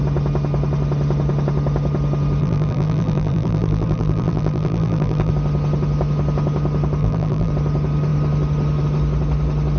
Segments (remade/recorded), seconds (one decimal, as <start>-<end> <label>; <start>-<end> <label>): 0.0-2.4 recorded; 2.4-5.3 remade; 5.3-7.0 recorded; 7.0-7.5 remade; 7.5-9.8 recorded